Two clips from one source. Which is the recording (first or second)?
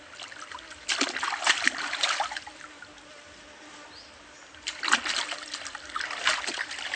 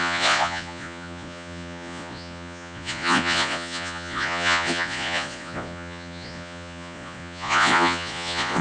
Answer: first